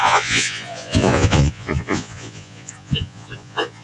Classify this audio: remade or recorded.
remade